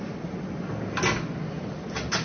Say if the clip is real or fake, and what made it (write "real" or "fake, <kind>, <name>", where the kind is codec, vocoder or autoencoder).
real